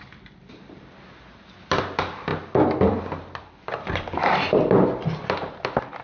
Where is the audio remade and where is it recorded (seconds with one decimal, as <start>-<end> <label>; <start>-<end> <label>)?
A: 0.0-6.0 remade